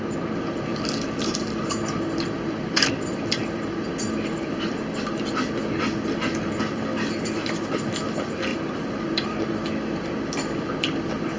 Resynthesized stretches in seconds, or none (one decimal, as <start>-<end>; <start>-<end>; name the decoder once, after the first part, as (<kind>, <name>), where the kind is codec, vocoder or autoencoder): none